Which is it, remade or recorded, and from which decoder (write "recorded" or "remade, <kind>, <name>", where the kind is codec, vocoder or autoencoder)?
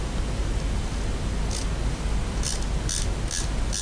recorded